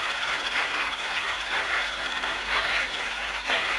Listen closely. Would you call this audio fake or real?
fake